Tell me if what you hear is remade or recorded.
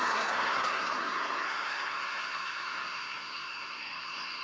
remade